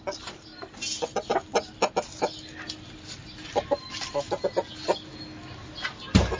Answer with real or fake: real